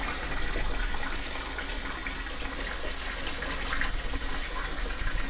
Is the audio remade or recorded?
recorded